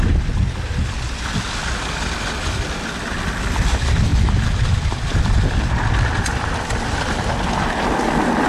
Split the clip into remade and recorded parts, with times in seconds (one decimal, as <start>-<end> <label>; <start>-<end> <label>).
0.0-8.5 recorded